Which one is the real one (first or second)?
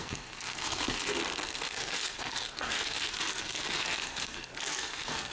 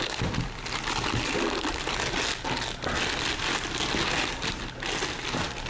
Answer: second